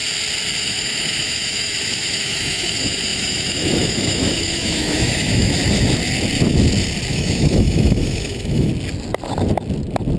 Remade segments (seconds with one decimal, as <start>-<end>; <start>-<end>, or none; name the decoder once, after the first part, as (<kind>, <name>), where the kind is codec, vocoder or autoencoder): 0.6-5.6 (autoencoder, DAC-VAE); 7.1-8.7